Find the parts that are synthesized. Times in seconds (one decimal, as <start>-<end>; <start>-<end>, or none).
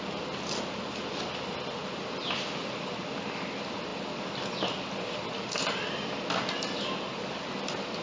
1.8-3.1